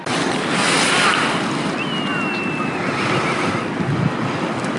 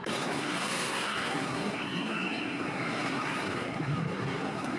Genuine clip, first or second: first